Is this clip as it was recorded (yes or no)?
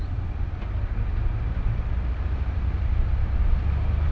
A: yes